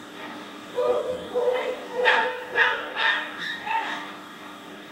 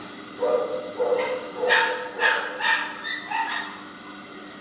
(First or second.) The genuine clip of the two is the second